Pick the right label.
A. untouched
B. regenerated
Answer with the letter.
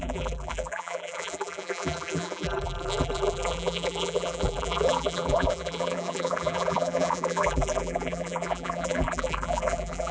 B